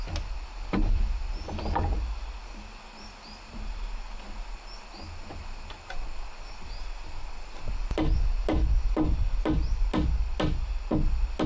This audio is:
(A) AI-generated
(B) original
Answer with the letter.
B